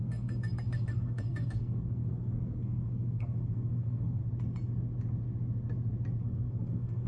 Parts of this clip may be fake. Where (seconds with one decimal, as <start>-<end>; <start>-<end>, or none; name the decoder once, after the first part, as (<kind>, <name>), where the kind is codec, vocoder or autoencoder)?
0.0-4.2 (codec, SNAC); 6.2-7.1